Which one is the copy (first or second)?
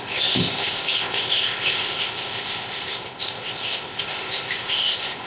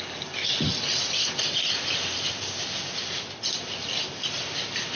first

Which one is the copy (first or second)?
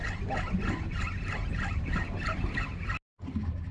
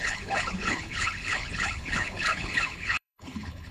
second